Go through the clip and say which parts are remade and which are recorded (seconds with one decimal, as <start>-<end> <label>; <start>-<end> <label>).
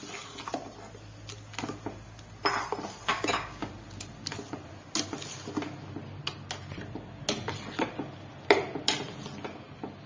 0.0-3.1 recorded; 3.1-3.7 remade; 3.7-10.1 recorded